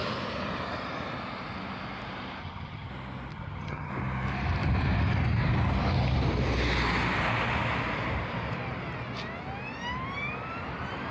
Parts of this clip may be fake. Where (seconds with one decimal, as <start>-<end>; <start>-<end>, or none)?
2.4-2.9; 3.3-3.9